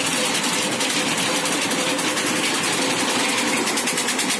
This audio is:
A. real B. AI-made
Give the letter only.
A